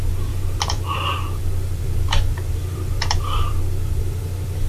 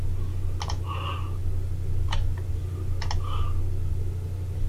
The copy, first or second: first